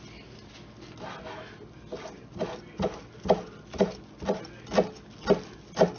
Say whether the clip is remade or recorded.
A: recorded